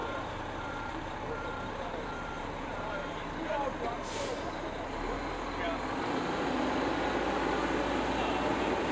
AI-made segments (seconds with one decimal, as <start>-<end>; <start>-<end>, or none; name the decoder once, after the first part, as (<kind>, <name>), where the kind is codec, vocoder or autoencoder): 0.0-3.3 (vocoder, BigVGAN v2)